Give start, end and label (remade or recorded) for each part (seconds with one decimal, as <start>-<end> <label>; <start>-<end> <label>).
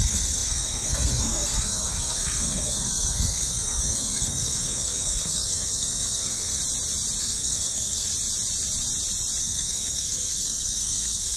0.0-6.6 remade; 6.6-7.2 recorded; 7.2-8.1 remade; 8.1-9.4 recorded; 9.4-11.4 remade